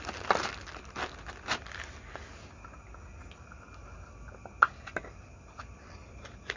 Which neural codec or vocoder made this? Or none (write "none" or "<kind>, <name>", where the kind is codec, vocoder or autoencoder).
none